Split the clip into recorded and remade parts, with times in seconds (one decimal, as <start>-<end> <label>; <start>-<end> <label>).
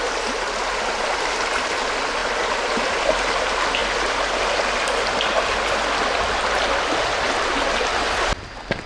0.0-8.9 recorded